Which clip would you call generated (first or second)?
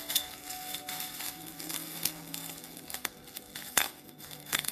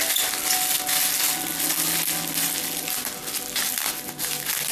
first